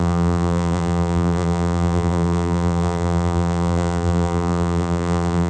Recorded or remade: remade